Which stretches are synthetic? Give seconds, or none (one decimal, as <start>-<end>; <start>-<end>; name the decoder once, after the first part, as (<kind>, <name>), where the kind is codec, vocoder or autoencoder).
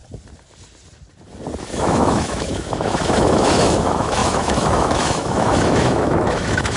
1.6-6.8 (autoencoder, DAC-VAE)